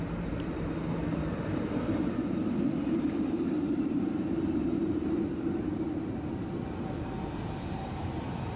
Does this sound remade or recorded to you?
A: remade